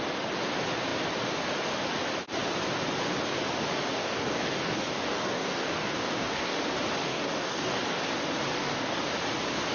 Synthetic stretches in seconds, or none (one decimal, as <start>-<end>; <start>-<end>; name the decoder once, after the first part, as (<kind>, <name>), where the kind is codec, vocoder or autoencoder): 4.0-6.6 (codec, DAC); 7.0-7.8; 8.5-9.0